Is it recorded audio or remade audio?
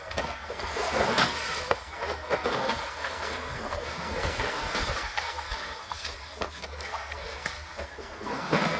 remade